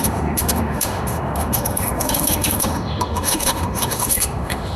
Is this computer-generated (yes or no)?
yes